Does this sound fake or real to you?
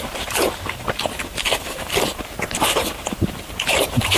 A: fake